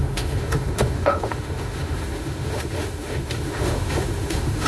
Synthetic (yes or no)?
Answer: yes